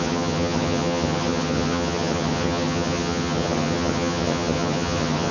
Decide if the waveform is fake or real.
fake